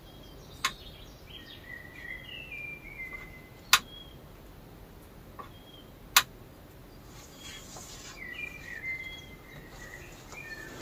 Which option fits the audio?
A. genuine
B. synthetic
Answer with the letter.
A